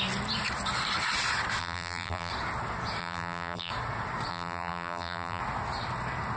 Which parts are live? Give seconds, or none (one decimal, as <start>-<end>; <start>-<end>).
0.0-1.6; 2.3-3.0; 3.7-4.3; 5.4-6.4